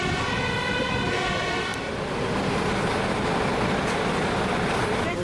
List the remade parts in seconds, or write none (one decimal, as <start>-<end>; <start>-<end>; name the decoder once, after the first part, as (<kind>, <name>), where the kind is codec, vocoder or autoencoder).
none